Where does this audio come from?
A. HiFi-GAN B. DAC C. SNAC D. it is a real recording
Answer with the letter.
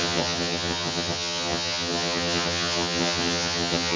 A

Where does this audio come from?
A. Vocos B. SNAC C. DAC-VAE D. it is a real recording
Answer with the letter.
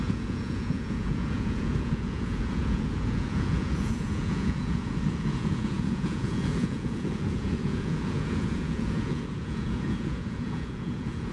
A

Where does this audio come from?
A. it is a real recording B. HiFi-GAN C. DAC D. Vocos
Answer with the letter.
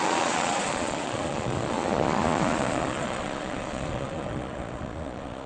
D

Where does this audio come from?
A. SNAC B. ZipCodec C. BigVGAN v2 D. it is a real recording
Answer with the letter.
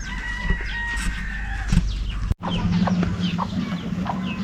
D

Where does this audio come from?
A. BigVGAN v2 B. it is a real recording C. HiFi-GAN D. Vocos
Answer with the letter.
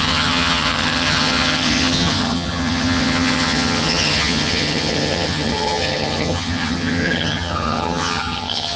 C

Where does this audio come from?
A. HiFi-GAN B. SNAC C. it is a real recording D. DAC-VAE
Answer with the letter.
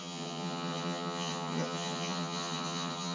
A